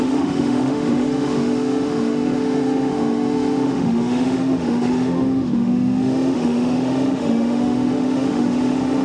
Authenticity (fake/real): fake